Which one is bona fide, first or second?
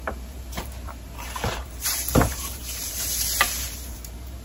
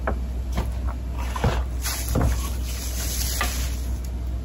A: second